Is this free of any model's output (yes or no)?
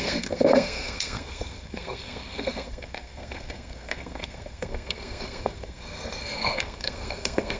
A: no